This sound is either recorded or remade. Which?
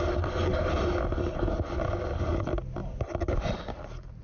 recorded